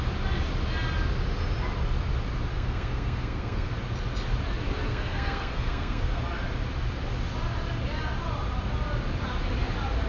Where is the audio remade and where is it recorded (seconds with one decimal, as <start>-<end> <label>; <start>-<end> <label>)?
0.0-2.5 recorded; 2.5-3.7 remade; 3.7-4.9 recorded; 4.9-6.2 remade; 6.2-10.1 recorded